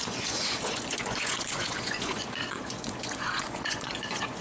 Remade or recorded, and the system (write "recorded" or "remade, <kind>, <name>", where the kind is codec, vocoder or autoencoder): remade, vocoder, Vocos